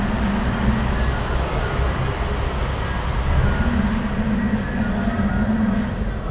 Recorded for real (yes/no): yes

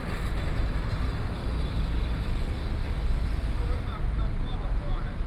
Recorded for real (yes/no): yes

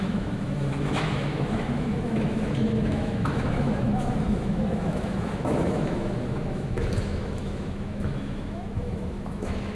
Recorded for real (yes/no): no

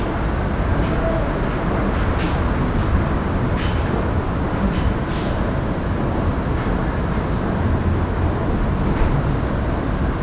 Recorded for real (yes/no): yes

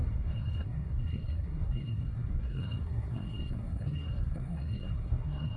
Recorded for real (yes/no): no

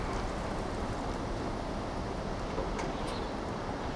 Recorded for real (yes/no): no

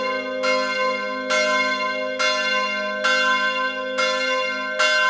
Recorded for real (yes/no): yes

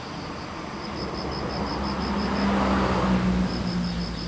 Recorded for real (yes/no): yes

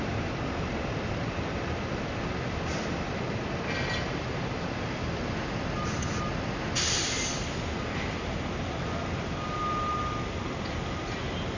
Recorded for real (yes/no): yes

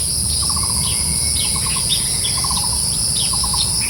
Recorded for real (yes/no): yes